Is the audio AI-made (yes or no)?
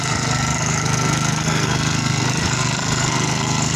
yes